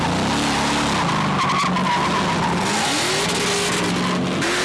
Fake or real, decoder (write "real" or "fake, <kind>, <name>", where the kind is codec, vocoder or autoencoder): real